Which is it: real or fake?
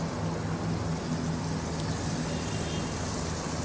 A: real